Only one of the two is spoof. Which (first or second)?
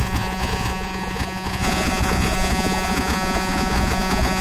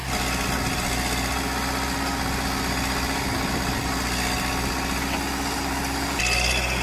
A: first